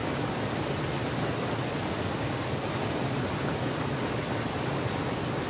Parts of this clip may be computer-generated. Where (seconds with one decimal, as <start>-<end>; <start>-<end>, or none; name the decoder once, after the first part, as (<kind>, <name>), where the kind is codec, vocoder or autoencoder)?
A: none